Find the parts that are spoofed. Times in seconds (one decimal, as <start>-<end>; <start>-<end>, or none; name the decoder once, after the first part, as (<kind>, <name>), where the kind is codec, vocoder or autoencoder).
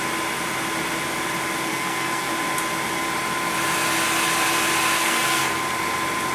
1.7-2.3 (codec, SNAC); 5.0-5.6